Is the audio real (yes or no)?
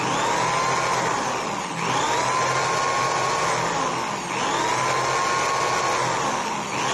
yes